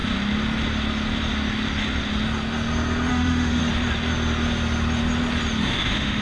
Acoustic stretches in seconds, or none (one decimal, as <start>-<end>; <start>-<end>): 0.0-3.1; 3.6-5.6